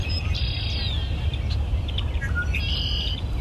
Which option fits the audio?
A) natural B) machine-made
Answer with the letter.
A